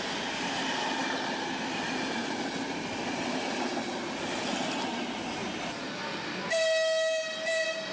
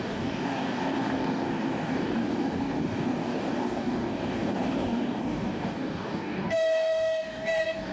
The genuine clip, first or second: first